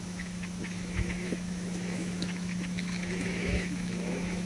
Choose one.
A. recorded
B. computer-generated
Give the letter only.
B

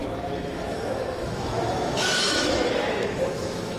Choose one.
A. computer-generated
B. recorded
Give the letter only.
A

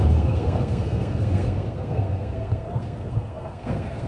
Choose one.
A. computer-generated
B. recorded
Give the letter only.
A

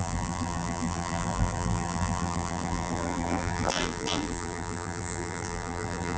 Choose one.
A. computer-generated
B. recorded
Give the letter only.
A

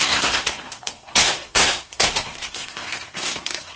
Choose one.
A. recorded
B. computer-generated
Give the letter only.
B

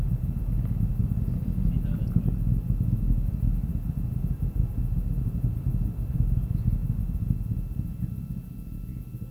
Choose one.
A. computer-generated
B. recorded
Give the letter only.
B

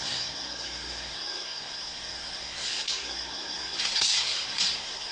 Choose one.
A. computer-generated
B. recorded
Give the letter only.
A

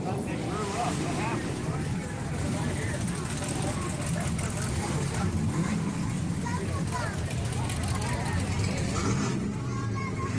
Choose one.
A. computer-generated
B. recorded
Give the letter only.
A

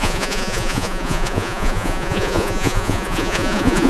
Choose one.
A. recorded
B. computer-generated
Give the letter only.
B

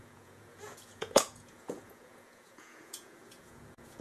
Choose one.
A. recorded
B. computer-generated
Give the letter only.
B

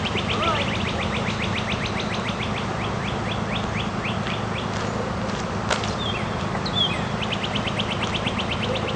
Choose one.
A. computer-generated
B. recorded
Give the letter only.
B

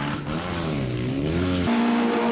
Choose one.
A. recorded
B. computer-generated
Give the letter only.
A